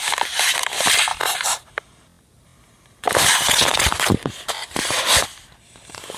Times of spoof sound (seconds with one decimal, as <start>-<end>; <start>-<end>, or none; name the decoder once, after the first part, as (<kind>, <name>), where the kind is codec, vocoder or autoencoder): 3.7-4.9 (vocoder, BigVGAN v2)